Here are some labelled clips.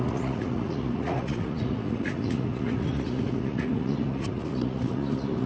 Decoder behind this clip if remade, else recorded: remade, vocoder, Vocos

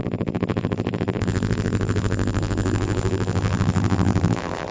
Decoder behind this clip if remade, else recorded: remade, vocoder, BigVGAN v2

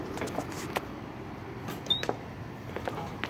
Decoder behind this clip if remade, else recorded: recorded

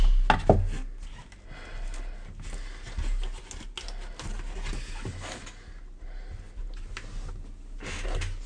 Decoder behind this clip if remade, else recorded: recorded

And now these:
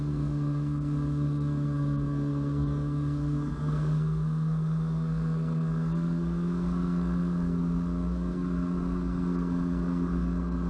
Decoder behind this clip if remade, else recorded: remade, codec, SNAC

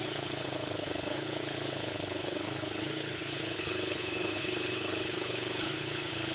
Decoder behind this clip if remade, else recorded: remade, codec, HILCodec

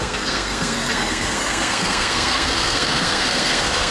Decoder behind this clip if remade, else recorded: remade, codec, SNAC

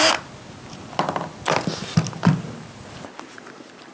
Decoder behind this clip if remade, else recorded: recorded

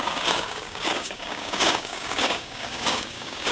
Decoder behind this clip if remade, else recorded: remade, codec, DAC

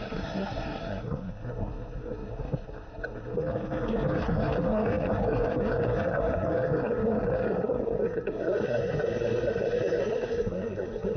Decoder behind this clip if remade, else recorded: remade, codec, SNAC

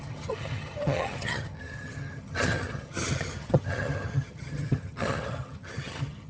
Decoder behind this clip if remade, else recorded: remade, vocoder, HiFi-GAN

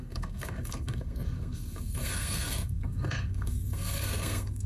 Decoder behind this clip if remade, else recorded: remade, codec, SNAC